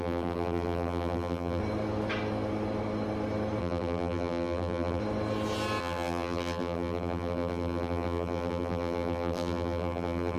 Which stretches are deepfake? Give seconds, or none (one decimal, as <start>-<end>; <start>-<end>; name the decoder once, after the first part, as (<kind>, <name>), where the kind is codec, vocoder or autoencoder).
0.0-1.6 (vocoder, BigVGAN v2); 3.6-5.0; 5.8-10.4